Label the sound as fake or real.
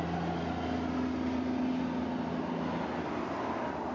real